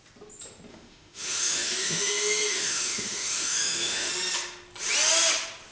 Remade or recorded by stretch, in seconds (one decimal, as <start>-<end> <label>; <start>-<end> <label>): 0.0-0.7 recorded; 0.7-4.1 remade; 4.1-5.7 recorded